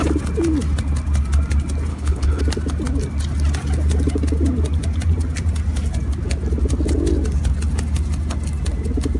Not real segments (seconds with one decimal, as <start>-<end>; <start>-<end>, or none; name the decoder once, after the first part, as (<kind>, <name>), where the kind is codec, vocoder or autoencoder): 1.9-2.4 (codec, HILCodec)